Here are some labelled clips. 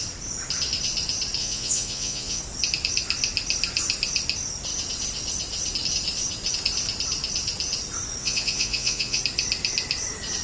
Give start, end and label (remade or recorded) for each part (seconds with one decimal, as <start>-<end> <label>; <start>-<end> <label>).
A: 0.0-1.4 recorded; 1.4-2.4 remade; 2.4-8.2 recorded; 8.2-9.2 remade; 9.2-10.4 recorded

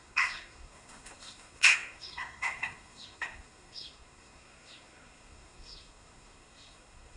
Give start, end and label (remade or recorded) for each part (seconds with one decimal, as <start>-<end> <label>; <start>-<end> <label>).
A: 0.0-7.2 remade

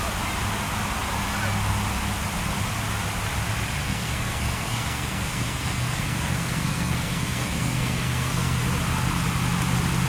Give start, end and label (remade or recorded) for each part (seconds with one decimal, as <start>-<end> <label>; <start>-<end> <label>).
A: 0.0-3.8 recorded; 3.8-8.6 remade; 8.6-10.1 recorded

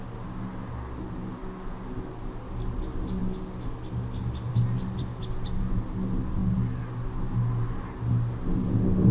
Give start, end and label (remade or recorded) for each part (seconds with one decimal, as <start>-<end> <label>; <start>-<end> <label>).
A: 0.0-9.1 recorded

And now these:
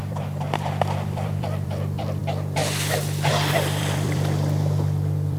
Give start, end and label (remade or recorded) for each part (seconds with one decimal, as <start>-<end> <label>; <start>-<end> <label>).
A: 0.0-2.6 remade; 2.6-3.5 recorded; 3.5-5.4 remade

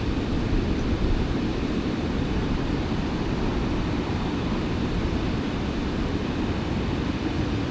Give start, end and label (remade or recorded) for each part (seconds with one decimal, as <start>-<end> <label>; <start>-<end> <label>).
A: 0.0-1.5 recorded; 1.5-2.5 remade; 2.5-3.5 recorded; 3.5-5.3 remade; 5.3-7.7 recorded

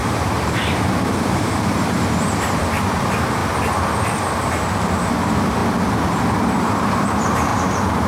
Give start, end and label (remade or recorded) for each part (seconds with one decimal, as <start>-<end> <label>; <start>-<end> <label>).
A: 0.0-3.4 remade; 3.4-5.1 recorded; 5.1-5.6 remade; 5.6-6.6 recorded; 6.6-8.1 remade

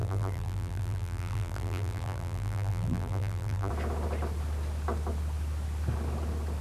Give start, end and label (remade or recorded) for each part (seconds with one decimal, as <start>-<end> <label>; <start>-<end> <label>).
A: 0.0-3.7 remade; 3.7-6.6 recorded